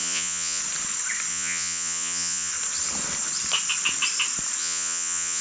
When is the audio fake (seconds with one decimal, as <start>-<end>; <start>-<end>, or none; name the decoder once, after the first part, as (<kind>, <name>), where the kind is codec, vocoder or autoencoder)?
0.0-0.6 (vocoder, Vocos); 1.3-2.5; 4.6-5.4